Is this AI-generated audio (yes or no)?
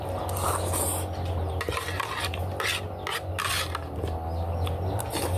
no